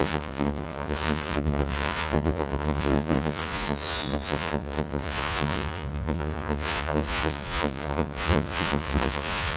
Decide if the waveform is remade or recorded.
remade